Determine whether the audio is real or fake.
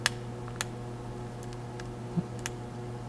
real